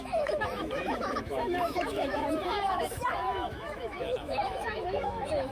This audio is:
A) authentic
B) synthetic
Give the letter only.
B